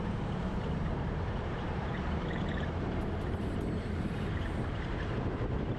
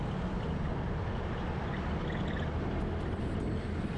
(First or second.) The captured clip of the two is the second